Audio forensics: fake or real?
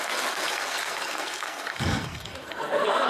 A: fake